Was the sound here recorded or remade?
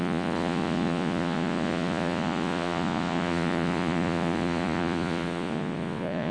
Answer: remade